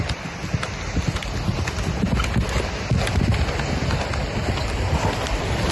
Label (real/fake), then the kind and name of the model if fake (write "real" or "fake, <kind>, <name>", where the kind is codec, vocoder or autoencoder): real